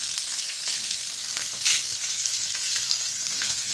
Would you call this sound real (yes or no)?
no